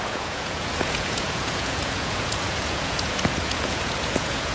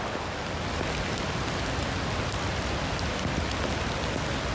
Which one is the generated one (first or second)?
first